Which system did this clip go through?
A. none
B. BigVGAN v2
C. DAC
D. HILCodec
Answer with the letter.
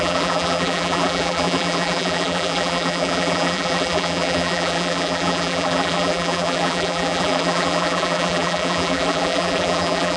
B